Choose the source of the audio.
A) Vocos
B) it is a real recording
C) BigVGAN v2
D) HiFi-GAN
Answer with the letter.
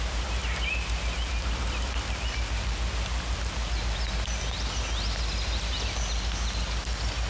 B